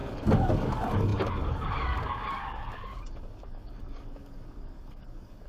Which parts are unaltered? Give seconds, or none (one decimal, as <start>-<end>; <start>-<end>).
none